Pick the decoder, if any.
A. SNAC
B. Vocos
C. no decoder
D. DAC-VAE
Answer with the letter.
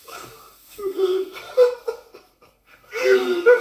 A